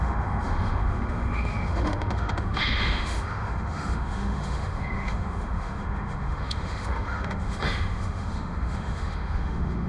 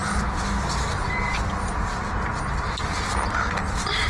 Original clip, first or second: second